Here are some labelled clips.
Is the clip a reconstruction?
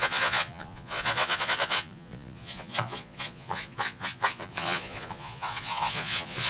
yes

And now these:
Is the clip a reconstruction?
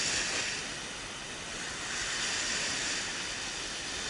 no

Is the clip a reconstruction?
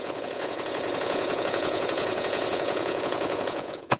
yes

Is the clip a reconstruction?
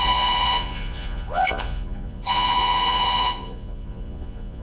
yes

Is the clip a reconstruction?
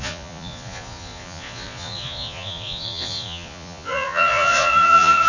yes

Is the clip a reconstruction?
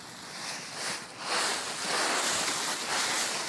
no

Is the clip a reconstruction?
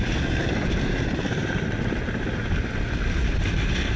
no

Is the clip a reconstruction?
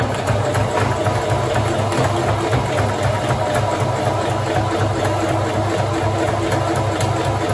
no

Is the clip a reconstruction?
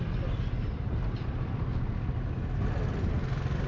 no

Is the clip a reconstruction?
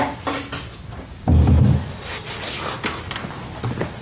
no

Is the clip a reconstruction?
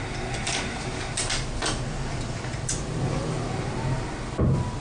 no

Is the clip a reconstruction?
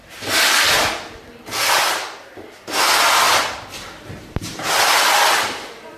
no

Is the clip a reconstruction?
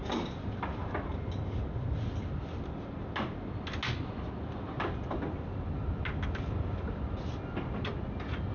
no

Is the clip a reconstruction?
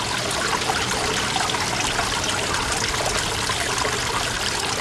no